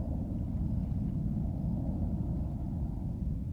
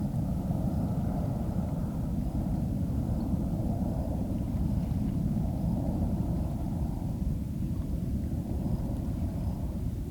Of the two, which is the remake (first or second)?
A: second